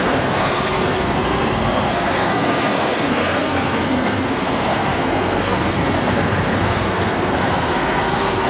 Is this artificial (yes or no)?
yes